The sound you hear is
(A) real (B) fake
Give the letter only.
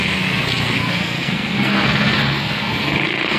B